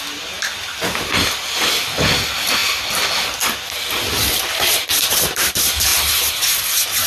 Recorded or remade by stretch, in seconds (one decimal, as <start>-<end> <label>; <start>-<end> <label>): 0.0-7.1 recorded